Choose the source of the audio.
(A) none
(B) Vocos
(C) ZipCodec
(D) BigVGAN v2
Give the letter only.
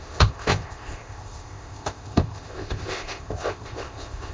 C